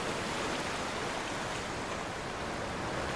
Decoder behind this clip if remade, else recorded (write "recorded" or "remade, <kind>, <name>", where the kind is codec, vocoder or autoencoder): recorded